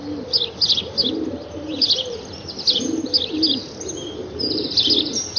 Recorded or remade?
recorded